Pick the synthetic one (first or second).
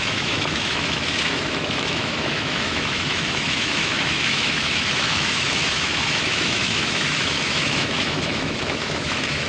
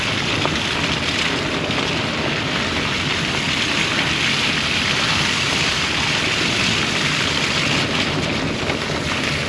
first